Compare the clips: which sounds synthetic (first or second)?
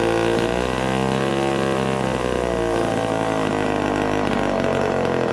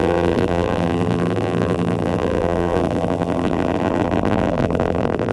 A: second